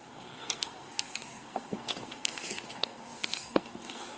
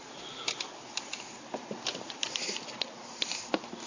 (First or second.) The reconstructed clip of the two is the first